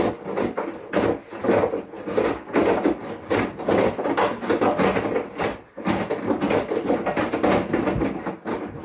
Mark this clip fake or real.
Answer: real